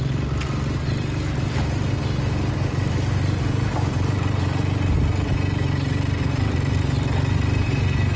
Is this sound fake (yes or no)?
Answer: no